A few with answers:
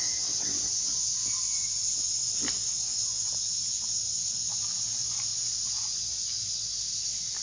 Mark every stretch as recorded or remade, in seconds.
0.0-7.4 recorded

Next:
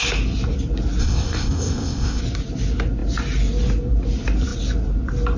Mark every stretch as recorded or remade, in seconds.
0.0-1.0 recorded; 1.0-2.2 remade; 2.2-5.4 recorded

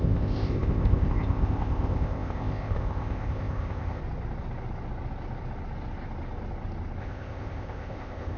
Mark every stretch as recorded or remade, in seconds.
0.0-4.0 remade; 4.0-7.0 recorded; 7.0-8.4 remade

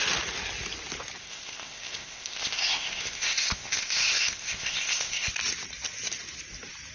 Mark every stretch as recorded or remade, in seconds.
0.0-1.2 recorded; 1.2-5.3 remade; 5.3-6.9 recorded

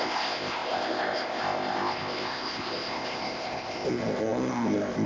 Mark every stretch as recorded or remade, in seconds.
0.0-5.1 remade

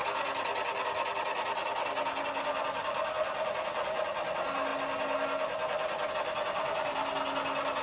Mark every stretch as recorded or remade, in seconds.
0.0-7.8 recorded